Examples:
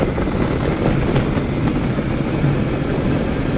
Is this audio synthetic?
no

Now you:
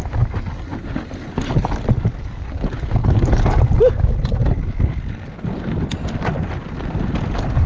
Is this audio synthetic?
no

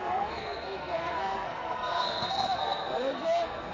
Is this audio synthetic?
yes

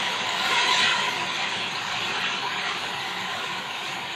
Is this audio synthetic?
yes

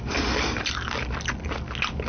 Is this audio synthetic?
no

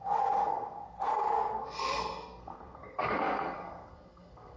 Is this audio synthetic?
yes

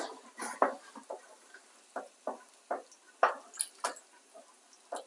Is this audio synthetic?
no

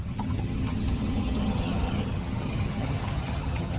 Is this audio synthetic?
yes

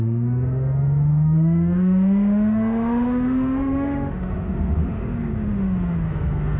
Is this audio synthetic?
yes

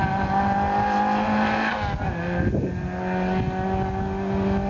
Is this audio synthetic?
no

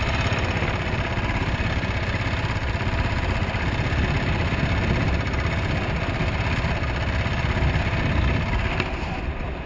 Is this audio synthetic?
yes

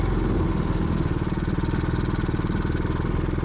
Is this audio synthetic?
no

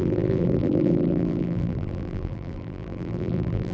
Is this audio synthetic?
yes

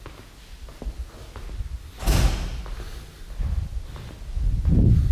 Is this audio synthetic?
no